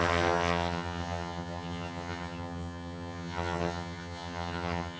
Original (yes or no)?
no